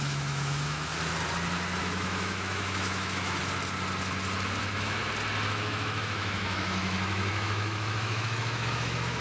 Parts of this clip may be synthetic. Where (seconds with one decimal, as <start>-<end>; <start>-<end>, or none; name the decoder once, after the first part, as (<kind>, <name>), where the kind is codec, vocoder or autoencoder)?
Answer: 0.0-0.9 (autoencoder, DAC-VAE); 1.8-3.4; 4.6-5.0; 5.5-9.2